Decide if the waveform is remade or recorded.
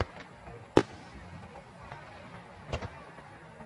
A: recorded